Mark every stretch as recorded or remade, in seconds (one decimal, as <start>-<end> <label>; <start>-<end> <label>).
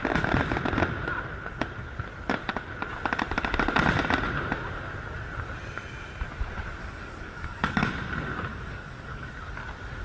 0.0-6.8 recorded; 6.8-7.9 remade; 7.9-8.5 recorded; 8.5-9.3 remade; 9.3-10.0 recorded